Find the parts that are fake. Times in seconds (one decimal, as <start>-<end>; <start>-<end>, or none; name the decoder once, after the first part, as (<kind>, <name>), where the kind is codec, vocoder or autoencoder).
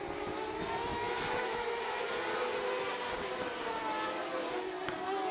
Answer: 0.9-1.8 (autoencoder, DAC-VAE)